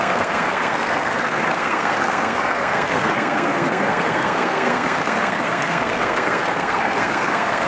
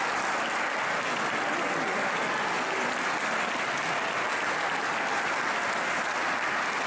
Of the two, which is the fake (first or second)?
first